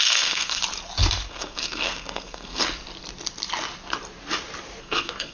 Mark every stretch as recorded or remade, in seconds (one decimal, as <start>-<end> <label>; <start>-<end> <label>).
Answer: 0.0-0.6 remade; 0.6-1.3 recorded; 1.3-2.6 remade; 2.6-4.8 recorded; 4.8-5.3 remade